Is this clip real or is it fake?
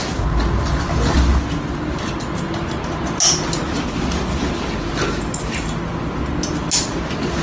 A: real